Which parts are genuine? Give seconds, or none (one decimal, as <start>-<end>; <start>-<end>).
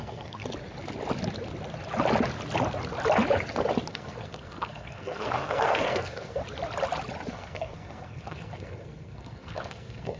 0.4-3.9; 6.4-7.3